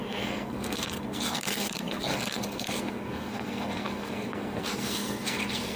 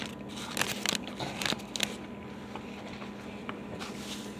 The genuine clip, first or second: second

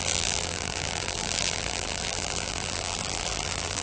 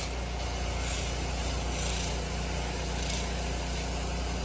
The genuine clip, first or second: second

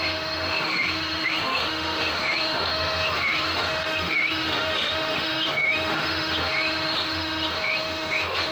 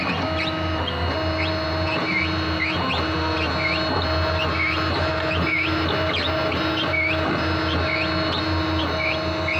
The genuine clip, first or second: second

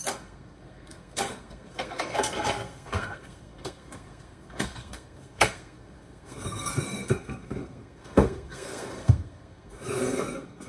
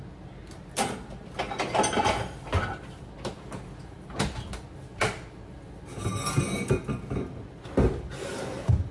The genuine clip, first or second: second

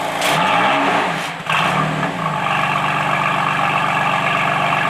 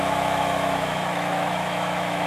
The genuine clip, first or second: first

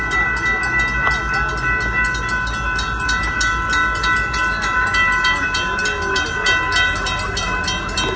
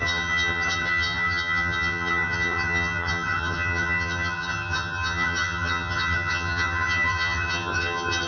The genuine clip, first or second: first